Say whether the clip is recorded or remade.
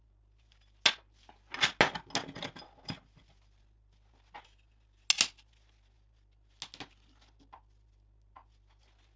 recorded